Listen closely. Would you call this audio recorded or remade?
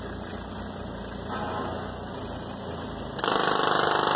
recorded